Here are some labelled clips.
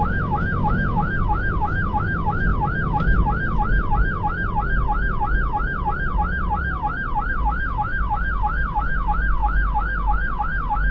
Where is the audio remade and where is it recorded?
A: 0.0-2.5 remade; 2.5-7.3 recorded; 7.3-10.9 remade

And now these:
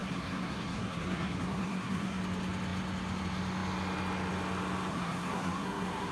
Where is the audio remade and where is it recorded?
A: 0.0-2.2 remade; 2.2-4.9 recorded; 4.9-6.1 remade

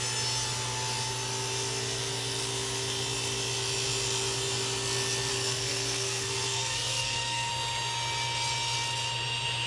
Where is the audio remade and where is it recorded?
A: 0.0-5.3 recorded; 5.3-7.5 remade; 7.5-9.7 recorded

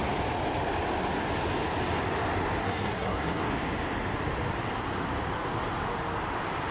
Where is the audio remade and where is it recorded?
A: 0.0-2.6 recorded; 2.6-3.5 remade; 3.5-6.7 recorded

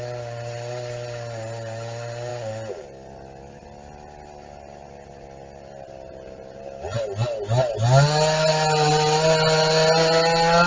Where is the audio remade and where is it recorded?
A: 0.0-10.7 recorded